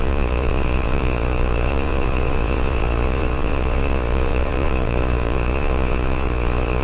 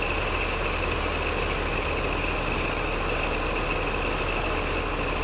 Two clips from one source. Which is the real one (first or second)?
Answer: second